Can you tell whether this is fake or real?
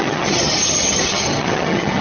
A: fake